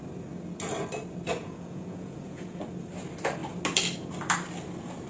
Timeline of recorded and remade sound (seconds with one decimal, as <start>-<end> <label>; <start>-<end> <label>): 0.0-1.4 recorded; 1.4-2.6 remade; 2.6-5.1 recorded